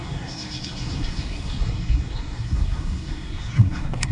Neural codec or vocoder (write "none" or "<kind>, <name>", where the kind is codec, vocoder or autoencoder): codec, SNAC